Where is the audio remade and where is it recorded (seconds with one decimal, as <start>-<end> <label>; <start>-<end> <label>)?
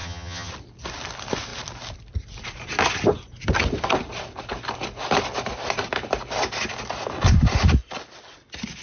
0.0-0.5 remade; 0.5-8.8 recorded